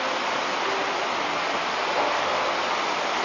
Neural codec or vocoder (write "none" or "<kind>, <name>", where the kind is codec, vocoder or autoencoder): none